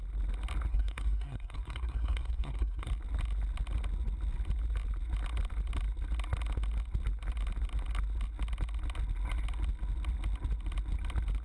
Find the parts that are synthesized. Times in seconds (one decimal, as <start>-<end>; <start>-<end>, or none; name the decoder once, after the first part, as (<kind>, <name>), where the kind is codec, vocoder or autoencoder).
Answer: 0.7-2.9 (codec, SNAC)